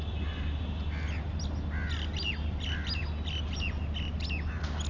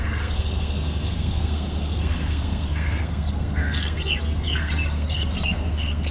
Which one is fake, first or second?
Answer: second